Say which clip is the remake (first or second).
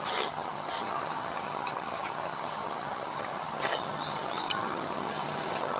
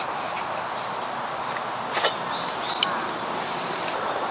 first